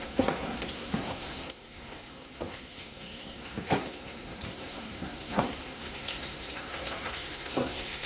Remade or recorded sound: remade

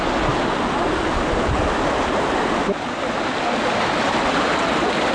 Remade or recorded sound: recorded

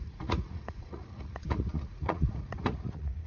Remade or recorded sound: remade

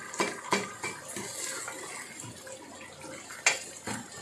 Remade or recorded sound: recorded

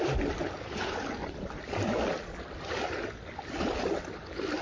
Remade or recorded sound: recorded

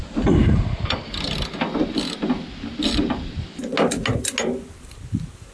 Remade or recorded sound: recorded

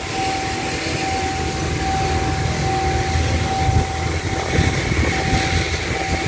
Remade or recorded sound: recorded